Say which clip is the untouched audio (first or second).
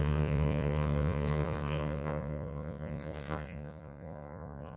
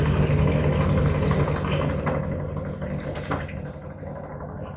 second